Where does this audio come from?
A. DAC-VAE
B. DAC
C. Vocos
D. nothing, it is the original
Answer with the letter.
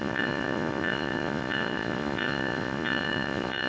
C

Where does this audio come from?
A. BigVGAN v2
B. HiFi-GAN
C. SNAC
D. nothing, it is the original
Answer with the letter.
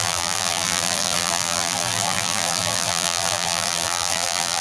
A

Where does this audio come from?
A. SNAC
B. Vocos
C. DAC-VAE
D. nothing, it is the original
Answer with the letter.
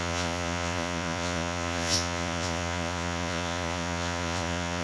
B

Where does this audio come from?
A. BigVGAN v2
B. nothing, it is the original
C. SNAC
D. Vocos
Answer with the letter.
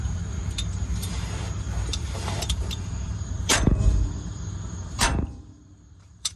A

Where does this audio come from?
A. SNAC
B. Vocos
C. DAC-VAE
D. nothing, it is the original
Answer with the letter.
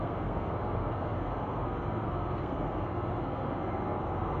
A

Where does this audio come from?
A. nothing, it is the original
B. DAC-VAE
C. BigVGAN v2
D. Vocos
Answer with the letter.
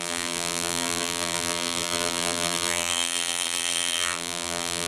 C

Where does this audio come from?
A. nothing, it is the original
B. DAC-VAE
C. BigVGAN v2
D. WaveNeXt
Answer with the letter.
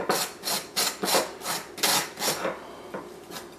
A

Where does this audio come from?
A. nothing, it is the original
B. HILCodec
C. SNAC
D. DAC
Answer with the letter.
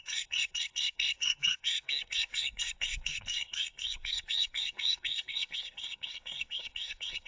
C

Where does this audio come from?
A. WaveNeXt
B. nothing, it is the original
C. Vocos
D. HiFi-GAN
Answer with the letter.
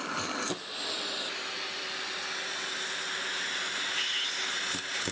B